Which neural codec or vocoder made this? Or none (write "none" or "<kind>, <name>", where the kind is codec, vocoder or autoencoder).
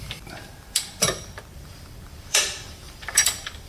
vocoder, BigVGAN v2